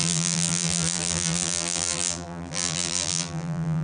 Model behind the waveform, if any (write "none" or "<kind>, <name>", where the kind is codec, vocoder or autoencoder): vocoder, BigVGAN v2